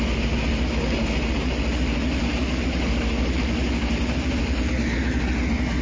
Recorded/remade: recorded